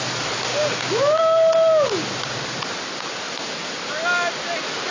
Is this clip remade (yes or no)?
no